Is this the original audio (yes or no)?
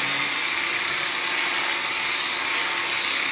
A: yes